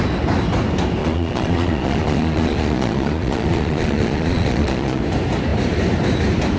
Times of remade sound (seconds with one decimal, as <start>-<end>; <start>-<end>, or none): 1.0-5.0

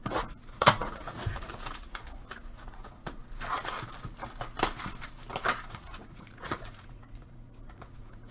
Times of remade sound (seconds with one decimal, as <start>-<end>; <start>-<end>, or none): 0.0-3.2; 5.7-8.3

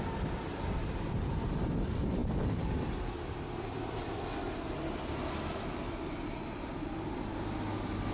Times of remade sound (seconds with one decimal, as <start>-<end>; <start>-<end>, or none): none

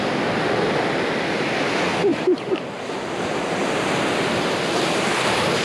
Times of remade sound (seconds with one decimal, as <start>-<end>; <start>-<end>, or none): none

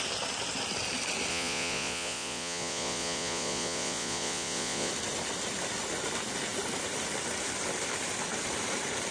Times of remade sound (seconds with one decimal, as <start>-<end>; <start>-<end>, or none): 1.3-4.9

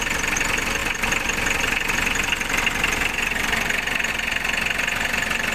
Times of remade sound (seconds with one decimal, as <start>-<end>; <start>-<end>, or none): none

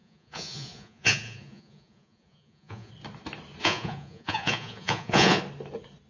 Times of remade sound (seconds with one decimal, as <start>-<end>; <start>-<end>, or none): 0.0-2.9; 3.6-5.4